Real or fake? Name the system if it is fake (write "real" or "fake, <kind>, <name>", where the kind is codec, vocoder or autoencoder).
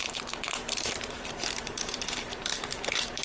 fake, vocoder, BigVGAN v2